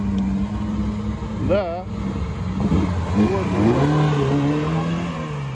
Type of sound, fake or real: real